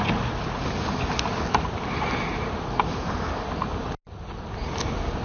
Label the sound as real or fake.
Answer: real